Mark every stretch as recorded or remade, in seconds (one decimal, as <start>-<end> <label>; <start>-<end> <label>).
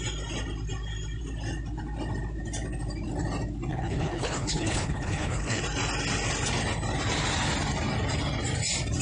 0.0-3.7 recorded; 3.7-5.6 remade; 5.6-9.0 recorded